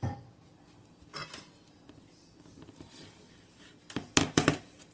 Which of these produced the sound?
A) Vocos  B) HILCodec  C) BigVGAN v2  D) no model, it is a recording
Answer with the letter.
C